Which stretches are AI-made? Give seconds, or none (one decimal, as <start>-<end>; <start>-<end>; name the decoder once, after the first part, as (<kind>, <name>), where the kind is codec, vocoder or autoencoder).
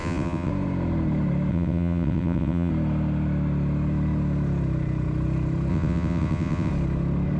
0.0-0.5 (vocoder, WaveNeXt); 1.5-2.7; 5.7-6.7